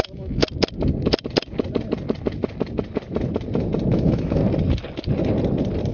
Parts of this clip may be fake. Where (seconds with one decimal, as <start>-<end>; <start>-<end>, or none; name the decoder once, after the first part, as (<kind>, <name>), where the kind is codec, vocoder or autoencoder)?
0.0-0.4 (autoencoder, DAC-VAE); 3.9-4.4